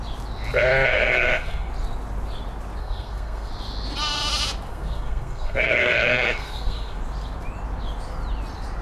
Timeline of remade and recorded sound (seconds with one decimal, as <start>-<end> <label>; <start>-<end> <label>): 0.0-0.9 recorded; 0.9-1.7 remade; 1.7-2.8 recorded; 2.8-3.5 remade; 3.5-4.7 recorded; 4.7-7.0 remade; 7.0-8.8 recorded